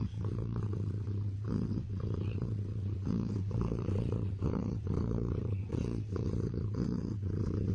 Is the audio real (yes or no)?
no